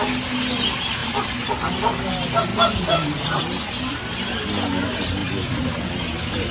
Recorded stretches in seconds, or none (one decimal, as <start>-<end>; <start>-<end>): 0.0-1.0; 1.5-2.5; 3.4-6.5